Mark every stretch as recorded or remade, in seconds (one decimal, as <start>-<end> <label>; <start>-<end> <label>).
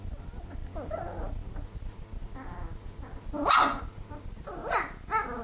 0.0-5.4 recorded